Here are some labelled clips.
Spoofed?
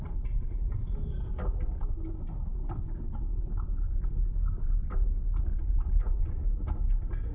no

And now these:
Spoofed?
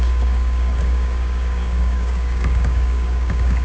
yes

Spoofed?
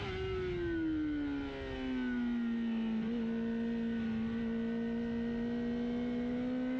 no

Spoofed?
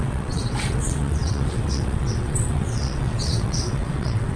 yes